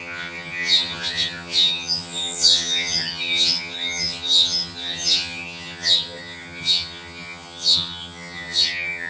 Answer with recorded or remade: remade